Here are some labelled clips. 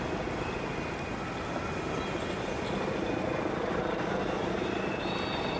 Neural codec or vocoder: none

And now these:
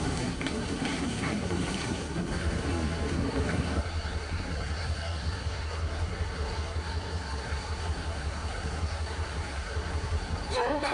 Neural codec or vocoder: codec, SNAC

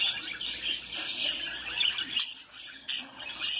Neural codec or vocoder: none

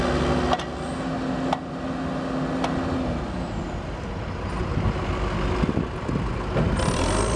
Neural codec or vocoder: none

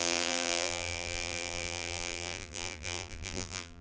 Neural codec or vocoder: vocoder, BigVGAN v2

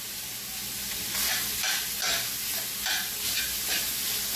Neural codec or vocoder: none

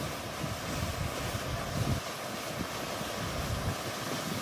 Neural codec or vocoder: none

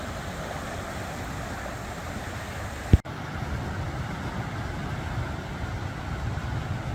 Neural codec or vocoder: none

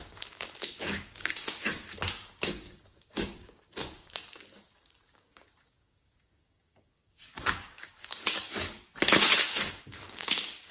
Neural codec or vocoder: codec, DAC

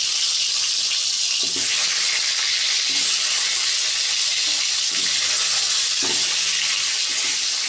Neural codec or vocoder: none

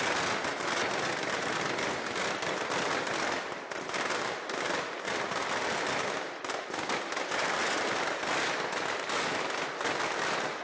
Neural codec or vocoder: none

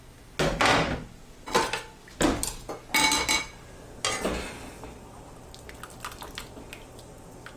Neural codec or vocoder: none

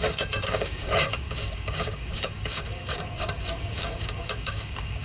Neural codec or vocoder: codec, DAC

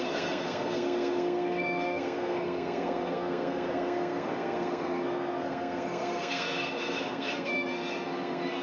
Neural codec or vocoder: codec, SNAC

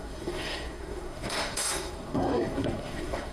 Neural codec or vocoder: codec, SNAC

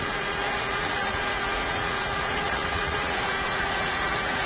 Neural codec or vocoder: vocoder, Vocos